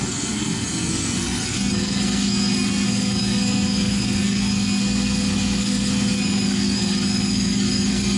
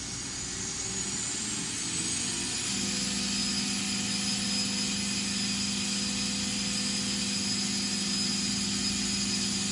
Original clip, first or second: second